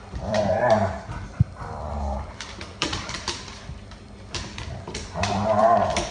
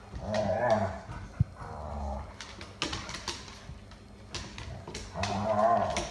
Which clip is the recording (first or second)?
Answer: second